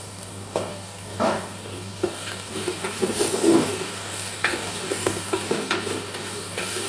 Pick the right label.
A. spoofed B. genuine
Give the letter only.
A